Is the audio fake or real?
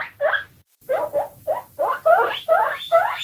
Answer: real